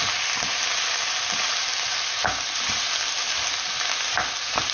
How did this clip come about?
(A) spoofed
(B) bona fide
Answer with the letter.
B